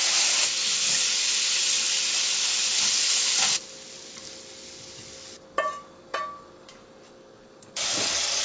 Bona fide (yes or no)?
yes